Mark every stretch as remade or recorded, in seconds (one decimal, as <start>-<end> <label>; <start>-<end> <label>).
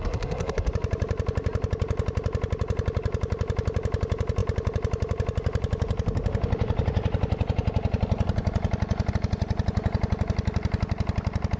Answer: 0.0-0.7 remade; 0.7-11.6 recorded